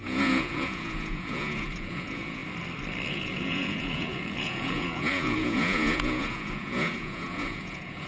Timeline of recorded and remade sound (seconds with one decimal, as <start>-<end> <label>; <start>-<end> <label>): 0.0-2.4 remade; 2.4-3.1 recorded; 3.1-8.1 remade